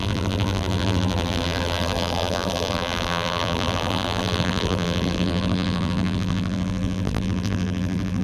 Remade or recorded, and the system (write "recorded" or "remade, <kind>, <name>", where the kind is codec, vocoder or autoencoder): remade, vocoder, BigVGAN v2